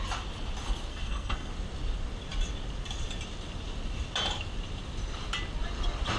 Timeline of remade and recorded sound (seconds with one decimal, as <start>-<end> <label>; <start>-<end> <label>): 0.0-0.9 recorded; 0.9-1.5 remade; 1.5-6.2 recorded